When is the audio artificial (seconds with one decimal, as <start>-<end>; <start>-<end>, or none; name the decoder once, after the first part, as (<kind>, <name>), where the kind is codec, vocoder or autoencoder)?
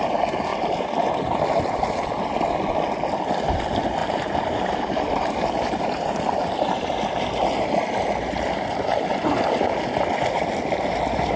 4.0-6.9 (vocoder, BigVGAN v2)